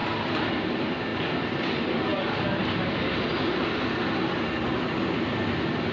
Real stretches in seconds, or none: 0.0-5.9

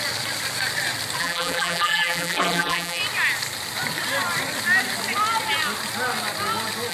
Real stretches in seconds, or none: 0.0-1.2; 3.0-6.9

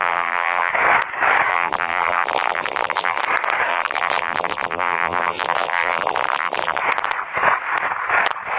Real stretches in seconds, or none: 0.7-1.5; 3.2-3.7; 6.8-8.6